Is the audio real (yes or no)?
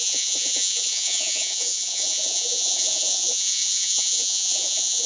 no